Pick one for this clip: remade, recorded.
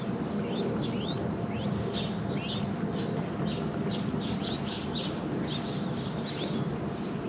recorded